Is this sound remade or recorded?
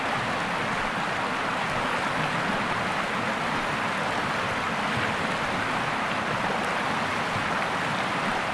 recorded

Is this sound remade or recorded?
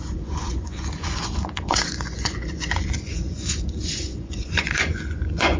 remade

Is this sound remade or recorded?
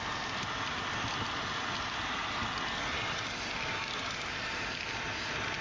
recorded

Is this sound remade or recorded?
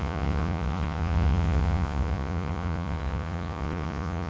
remade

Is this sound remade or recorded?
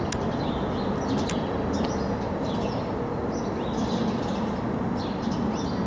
recorded